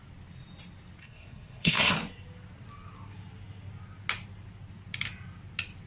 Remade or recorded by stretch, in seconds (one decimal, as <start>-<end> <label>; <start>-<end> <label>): 0.0-1.0 recorded; 1.0-1.9 remade; 1.9-5.9 recorded